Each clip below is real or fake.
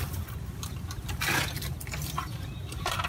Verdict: fake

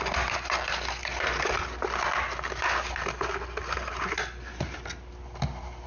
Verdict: real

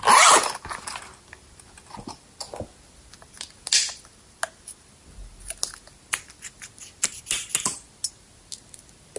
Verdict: real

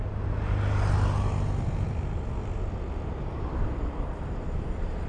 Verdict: real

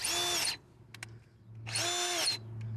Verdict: real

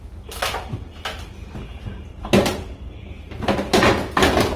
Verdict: real